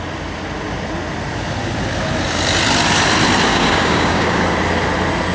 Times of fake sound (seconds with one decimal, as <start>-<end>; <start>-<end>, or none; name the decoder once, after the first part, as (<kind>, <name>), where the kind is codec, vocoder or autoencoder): 3.5-4.4 (codec, DAC)